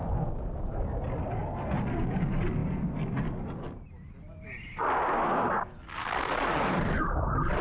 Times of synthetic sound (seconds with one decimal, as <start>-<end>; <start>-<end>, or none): none